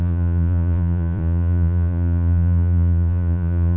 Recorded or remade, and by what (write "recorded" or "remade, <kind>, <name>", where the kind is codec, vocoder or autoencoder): remade, vocoder, Vocos